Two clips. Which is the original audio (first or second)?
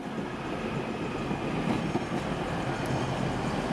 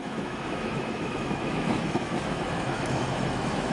first